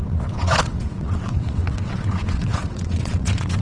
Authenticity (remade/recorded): remade